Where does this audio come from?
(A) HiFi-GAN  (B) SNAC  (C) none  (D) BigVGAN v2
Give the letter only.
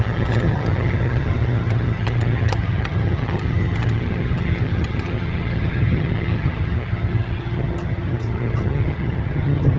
A